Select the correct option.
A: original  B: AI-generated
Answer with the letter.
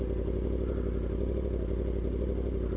A